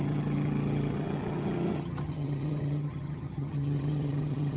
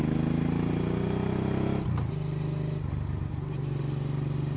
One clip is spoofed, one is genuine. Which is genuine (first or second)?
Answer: second